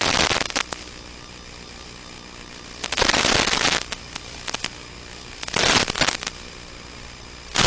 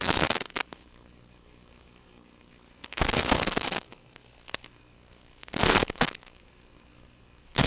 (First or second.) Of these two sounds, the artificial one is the second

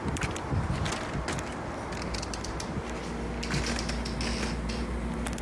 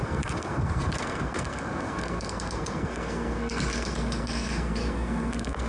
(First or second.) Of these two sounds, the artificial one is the second